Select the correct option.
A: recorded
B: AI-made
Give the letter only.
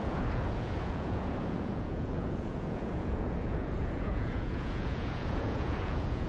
B